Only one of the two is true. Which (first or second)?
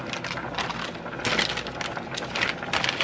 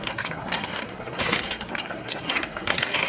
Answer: first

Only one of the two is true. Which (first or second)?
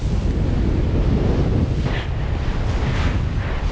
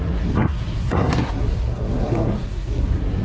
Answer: first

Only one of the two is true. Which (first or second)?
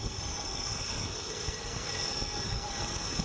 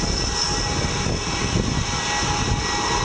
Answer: second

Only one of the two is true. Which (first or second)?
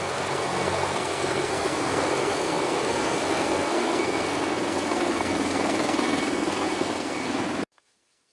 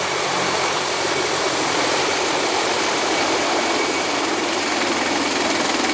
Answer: second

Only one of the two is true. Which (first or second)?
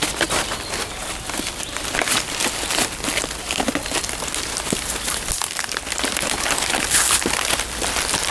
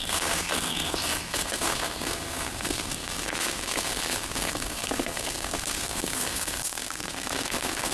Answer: first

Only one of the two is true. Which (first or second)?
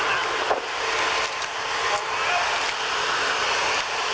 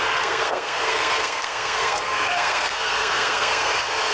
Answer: first